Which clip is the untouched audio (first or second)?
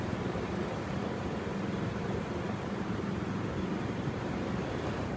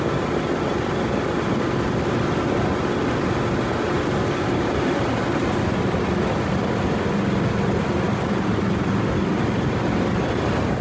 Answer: second